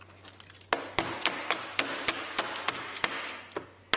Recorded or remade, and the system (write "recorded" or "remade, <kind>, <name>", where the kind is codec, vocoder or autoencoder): recorded